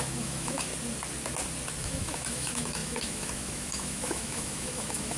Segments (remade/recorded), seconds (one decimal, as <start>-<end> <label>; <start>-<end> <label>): 0.0-0.7 remade; 0.7-1.8 recorded; 1.8-5.2 remade